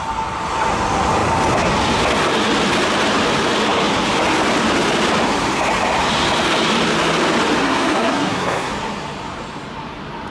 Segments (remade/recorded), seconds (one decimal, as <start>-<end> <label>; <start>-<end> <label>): 0.0-7.6 recorded; 7.6-8.7 remade; 8.7-10.3 recorded